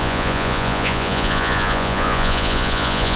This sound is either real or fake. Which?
fake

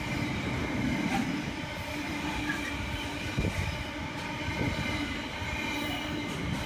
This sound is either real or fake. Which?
real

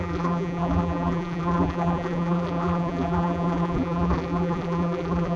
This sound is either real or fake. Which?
fake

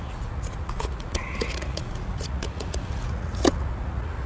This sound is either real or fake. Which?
fake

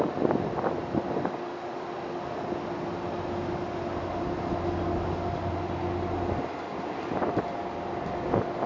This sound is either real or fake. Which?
real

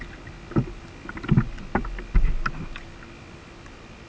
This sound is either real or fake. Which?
real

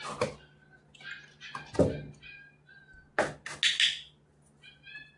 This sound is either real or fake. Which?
real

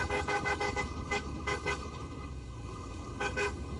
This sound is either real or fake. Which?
fake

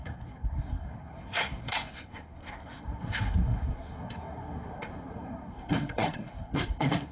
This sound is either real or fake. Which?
fake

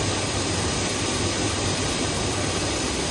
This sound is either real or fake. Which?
real